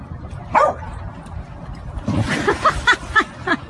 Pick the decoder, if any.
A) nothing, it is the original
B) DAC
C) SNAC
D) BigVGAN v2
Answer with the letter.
A